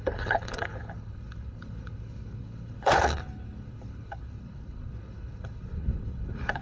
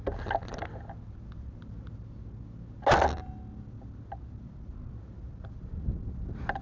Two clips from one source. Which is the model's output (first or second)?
first